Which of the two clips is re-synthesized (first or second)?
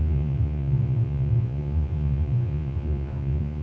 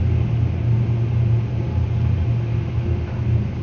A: first